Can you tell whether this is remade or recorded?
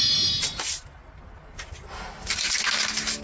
recorded